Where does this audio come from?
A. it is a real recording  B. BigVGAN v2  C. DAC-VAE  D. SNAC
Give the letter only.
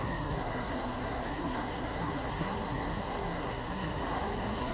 D